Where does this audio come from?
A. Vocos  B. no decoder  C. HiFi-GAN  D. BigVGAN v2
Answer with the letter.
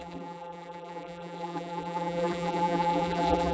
D